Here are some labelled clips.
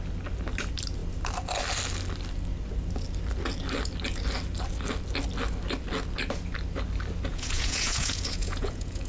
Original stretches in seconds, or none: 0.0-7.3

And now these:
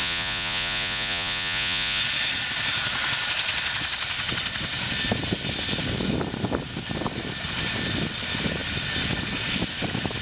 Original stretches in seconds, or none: 2.0-10.2

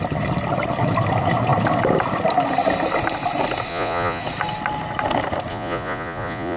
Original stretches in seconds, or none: 0.0-3.7; 4.2-5.5

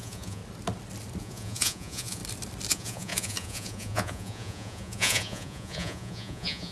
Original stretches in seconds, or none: 0.4-1.2; 2.2-2.7

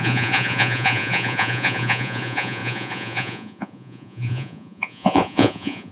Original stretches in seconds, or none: none

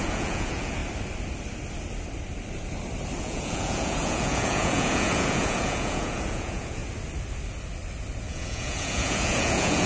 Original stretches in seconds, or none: 0.8-3.2; 6.8-8.2